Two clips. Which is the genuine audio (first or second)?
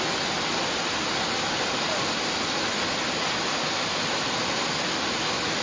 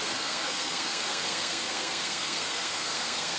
first